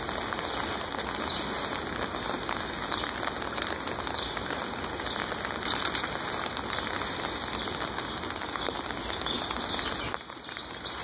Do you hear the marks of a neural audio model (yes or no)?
no